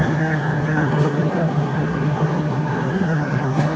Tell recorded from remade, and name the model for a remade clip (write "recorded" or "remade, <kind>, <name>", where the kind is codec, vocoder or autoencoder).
remade, codec, SNAC